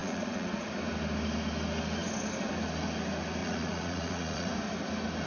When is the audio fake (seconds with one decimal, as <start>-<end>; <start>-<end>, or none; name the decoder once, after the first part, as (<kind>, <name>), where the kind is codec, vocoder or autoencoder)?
0.0-0.7 (vocoder, Vocos); 3.4-4.5